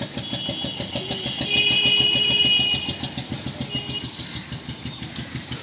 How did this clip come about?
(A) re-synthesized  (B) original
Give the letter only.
B